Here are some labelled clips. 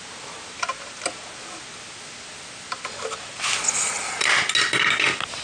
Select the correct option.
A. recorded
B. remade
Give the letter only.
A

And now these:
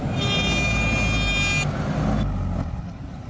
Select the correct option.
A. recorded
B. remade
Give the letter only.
A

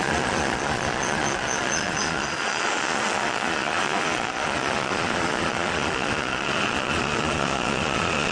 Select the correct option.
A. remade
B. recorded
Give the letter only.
A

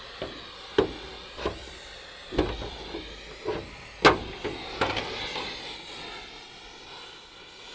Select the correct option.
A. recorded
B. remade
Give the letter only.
A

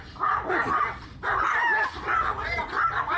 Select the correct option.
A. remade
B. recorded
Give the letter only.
B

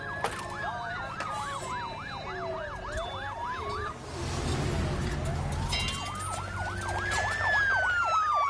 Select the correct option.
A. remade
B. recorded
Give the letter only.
B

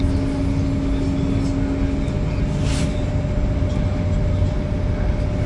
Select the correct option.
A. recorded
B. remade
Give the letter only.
A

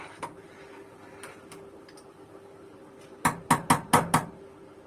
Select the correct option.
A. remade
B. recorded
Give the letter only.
B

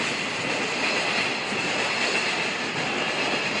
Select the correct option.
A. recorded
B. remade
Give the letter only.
A